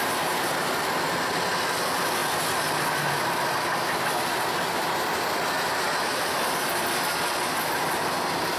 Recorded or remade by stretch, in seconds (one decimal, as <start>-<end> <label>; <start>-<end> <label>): 0.0-8.6 recorded

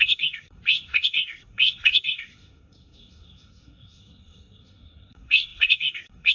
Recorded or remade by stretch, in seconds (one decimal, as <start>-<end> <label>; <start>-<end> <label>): 0.0-6.3 remade

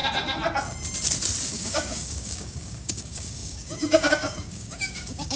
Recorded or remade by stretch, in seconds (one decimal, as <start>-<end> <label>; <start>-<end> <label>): 0.0-1.5 recorded; 1.5-5.4 remade

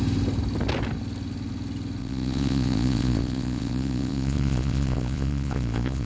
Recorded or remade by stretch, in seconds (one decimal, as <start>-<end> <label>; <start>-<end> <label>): 0.0-2.0 recorded; 2.0-6.1 remade

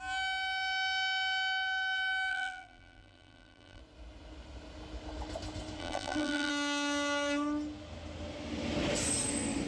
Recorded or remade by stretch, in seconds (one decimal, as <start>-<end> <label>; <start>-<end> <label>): 0.0-2.3 recorded; 2.3-3.8 remade; 3.8-5.8 recorded; 5.8-6.5 remade; 6.5-9.7 recorded

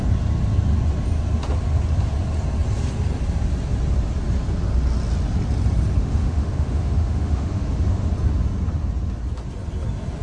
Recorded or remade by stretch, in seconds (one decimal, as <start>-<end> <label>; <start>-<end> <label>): 0.0-6.0 recorded; 6.0-8.1 remade; 8.1-10.2 recorded

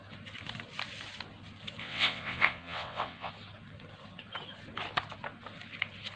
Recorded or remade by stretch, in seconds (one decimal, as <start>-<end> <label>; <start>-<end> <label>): 0.0-1.8 recorded; 1.8-3.3 remade; 3.3-6.2 recorded

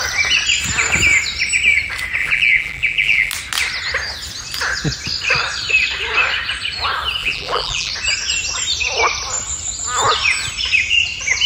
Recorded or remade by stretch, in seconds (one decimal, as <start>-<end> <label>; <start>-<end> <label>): 0.0-2.2 recorded; 2.2-3.3 remade; 3.3-7.2 recorded; 7.2-7.9 remade; 7.9-11.5 recorded